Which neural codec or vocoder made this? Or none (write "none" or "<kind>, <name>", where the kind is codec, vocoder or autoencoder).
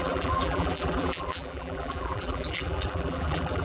vocoder, BigVGAN v2